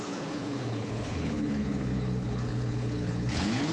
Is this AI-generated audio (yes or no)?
yes